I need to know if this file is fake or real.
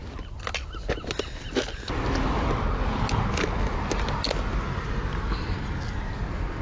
real